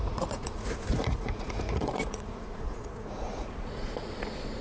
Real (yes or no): no